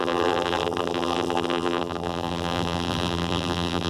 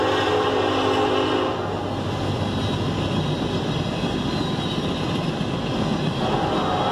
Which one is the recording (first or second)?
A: second